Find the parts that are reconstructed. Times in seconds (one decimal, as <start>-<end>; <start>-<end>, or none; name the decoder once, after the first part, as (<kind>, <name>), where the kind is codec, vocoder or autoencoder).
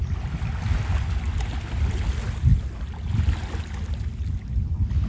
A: none